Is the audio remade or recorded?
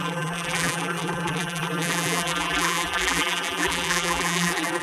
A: remade